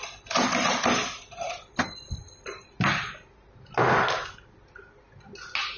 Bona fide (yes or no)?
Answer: yes